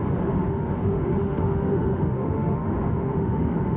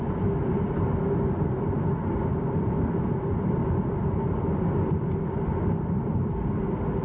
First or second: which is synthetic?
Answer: first